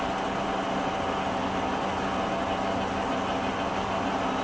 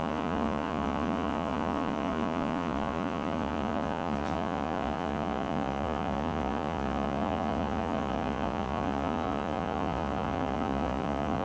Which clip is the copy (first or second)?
second